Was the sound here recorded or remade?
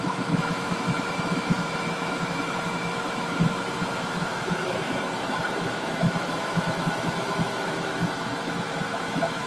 remade